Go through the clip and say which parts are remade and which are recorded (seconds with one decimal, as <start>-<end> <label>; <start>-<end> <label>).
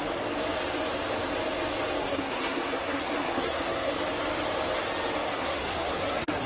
0.0-2.0 recorded; 2.0-3.9 remade; 3.9-5.3 recorded; 5.3-6.5 remade